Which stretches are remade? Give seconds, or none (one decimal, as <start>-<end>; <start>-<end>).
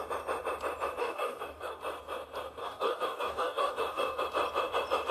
1.0-1.8; 2.6-4.2